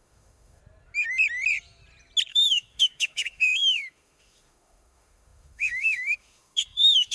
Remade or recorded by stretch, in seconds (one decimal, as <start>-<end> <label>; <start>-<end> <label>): 0.0-0.6 remade; 0.6-2.3 recorded; 2.3-7.1 remade